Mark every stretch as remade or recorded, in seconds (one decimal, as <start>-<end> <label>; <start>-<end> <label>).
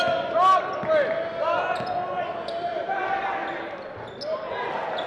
0.0-5.1 recorded